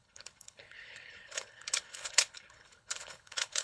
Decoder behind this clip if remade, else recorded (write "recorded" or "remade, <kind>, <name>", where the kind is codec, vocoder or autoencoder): remade, codec, HILCodec